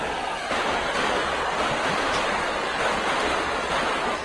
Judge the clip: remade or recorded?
recorded